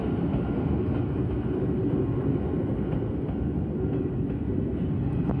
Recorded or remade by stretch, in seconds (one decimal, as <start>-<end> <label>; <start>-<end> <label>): 0.0-5.4 recorded